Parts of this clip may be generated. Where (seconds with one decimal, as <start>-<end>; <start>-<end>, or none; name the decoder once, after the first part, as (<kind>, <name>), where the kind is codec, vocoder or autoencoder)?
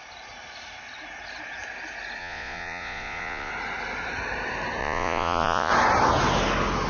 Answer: 2.2-3.5 (vocoder, Vocos); 4.8-5.7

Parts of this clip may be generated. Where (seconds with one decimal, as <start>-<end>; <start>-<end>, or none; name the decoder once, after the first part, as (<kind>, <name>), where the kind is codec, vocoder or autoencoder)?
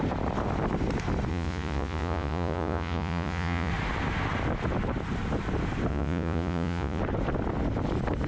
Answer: 1.3-3.7 (vocoder, Vocos); 5.9-7.0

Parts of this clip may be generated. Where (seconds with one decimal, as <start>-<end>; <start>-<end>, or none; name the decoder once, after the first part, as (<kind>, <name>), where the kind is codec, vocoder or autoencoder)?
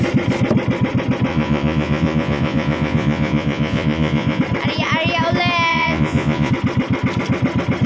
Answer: 1.3-4.4 (vocoder, Vocos); 5.7-6.5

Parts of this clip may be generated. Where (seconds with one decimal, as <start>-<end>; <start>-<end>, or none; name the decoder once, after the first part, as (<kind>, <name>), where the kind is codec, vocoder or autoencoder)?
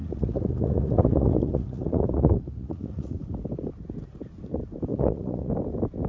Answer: 0.0-3.3 (vocoder, Vocos); 4.9-5.5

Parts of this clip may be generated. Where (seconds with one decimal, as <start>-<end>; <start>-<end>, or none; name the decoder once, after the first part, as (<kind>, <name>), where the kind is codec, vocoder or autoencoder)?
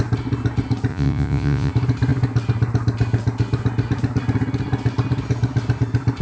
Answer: 0.9-1.7 (vocoder, Vocos)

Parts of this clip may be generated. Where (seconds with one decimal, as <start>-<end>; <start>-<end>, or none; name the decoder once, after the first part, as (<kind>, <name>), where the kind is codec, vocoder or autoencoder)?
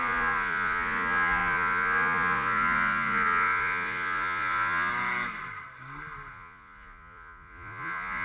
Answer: 0.0-4.9 (vocoder, Vocos); 6.3-8.2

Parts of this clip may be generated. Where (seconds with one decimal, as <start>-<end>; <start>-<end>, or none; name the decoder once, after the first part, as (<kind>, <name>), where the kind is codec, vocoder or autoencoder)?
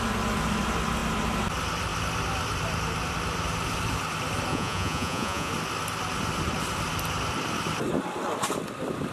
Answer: 4.5-5.5 (vocoder, Vocos)